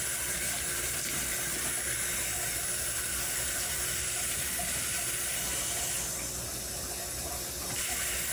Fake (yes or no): no